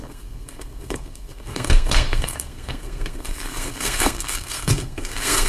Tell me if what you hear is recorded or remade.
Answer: remade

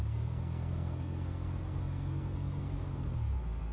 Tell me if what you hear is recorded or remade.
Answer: remade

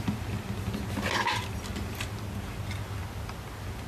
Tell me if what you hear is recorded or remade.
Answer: recorded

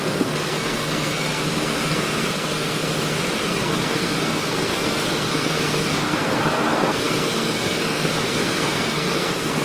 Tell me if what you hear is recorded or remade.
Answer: remade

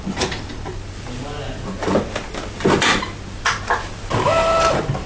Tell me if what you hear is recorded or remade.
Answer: recorded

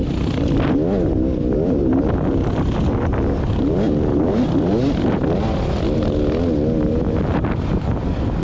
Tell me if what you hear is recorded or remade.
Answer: recorded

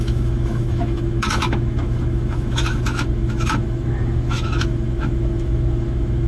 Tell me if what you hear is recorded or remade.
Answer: remade